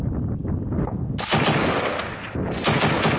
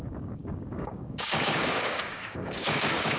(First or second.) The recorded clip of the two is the first